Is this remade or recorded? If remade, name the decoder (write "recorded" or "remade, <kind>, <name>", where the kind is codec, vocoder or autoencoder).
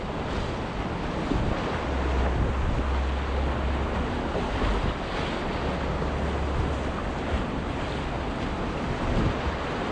recorded